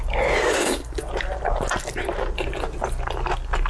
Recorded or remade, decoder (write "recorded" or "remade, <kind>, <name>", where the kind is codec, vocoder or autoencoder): recorded